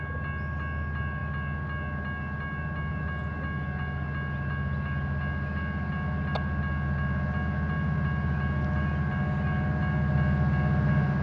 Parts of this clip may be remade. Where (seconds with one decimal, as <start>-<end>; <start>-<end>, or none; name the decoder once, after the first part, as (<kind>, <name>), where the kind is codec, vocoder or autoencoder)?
none